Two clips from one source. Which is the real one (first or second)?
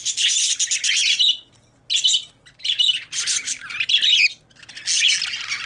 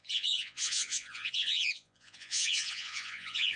first